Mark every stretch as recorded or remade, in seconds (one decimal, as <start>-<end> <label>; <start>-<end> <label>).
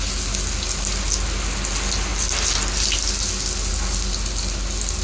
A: 0.0-5.0 recorded